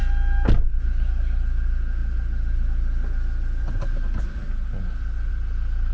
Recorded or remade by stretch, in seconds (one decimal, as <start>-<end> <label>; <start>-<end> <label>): 0.0-5.9 recorded